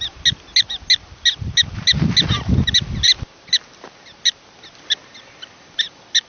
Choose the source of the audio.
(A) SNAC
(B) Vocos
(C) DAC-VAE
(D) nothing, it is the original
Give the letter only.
D